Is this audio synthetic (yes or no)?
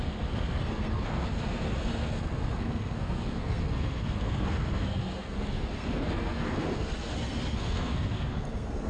yes